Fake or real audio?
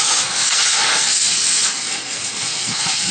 fake